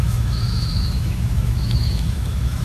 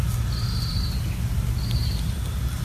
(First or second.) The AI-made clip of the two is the first